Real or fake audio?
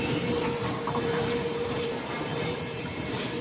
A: fake